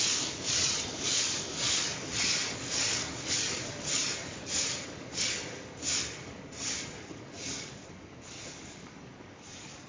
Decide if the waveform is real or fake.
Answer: fake